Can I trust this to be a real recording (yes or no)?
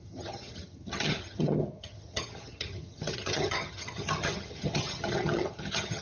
no